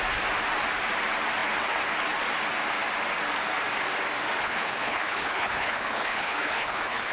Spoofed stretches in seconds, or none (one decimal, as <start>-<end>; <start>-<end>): 4.4-7.1

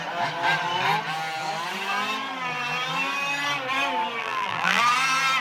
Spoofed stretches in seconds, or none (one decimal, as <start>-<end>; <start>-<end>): 4.2-4.8

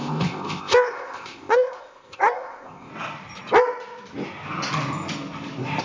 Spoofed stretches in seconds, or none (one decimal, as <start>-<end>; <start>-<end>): 0.0-2.9